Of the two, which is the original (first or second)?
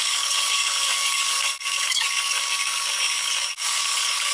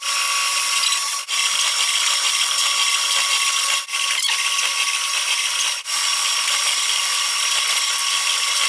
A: second